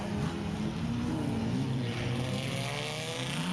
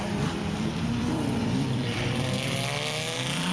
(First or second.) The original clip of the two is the first